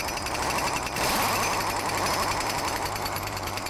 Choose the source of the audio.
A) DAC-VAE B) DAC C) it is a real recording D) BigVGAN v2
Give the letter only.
D